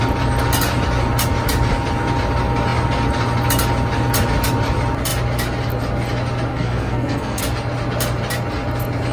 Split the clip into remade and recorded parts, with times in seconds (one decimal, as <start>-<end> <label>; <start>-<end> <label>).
0.0-6.5 recorded; 6.5-7.4 remade; 7.4-9.1 recorded